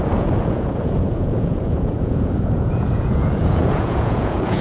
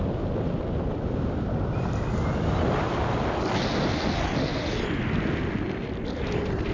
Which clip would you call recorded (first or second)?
second